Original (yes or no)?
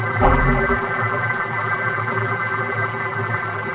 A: no